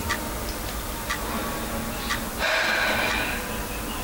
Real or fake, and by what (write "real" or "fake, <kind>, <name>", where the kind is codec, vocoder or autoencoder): real